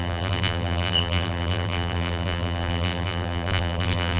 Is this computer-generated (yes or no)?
yes